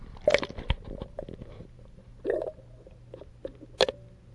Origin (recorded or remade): recorded